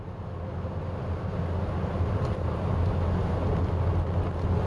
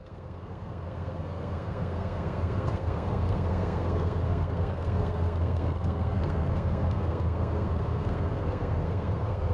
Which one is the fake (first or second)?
second